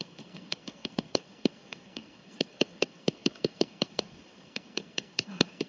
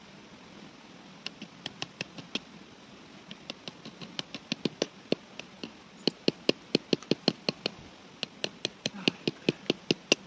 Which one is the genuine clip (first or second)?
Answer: second